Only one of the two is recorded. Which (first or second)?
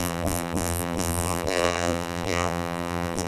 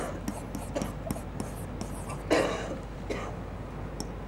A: second